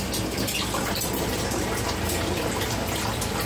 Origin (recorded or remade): remade